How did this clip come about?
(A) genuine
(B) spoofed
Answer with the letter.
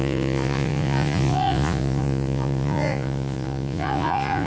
B